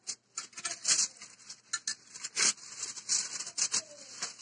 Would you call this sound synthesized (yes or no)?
no